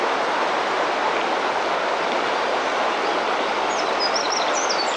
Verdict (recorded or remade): recorded